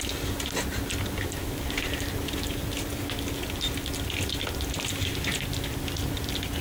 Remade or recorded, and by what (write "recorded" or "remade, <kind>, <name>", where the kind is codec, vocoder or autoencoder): recorded